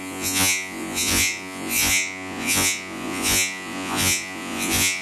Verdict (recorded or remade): remade